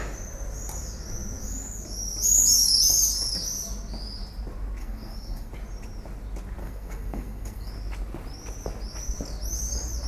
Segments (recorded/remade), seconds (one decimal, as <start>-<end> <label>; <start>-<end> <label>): 0.0-4.8 recorded; 4.8-5.5 remade; 5.5-6.6 recorded; 6.6-7.7 remade; 7.7-10.1 recorded